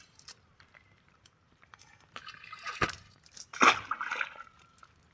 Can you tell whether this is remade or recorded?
remade